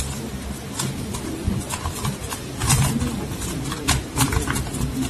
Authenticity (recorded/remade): recorded